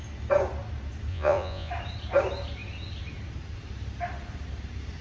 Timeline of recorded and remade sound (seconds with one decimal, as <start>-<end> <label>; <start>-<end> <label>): 0.0-1.1 recorded; 1.1-1.7 remade; 1.7-5.0 recorded